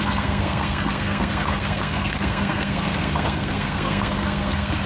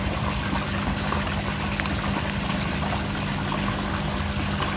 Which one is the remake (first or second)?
first